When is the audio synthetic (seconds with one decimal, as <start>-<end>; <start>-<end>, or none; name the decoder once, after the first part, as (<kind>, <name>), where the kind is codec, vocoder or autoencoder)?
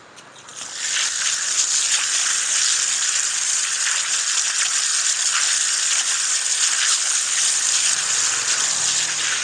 6.9-7.4 (codec, HILCodec)